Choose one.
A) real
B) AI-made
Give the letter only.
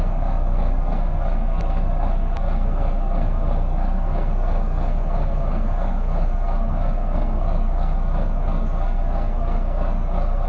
B